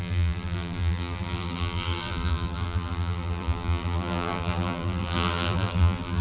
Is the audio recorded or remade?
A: remade